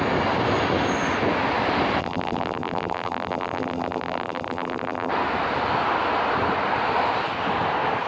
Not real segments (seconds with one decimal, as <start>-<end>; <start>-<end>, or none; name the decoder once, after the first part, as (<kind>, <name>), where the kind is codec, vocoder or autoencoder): 2.0-5.1 (vocoder, BigVGAN v2)